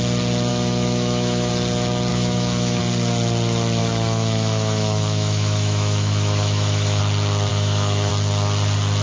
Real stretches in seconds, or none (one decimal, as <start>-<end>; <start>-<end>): 0.0-0.5; 1.5-2.1; 2.8-3.8; 7.0-7.5; 8.1-9.0